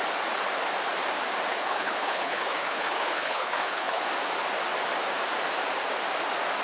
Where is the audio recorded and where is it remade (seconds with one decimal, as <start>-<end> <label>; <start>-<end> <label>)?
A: 0.0-1.5 recorded; 1.5-4.0 remade; 4.0-6.6 recorded